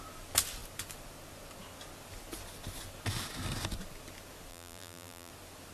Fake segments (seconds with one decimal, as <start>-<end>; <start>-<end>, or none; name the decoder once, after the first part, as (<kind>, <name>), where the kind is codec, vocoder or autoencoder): 4.5-5.3 (vocoder, BigVGAN v2)